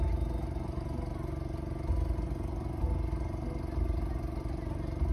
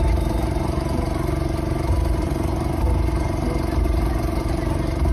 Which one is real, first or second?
first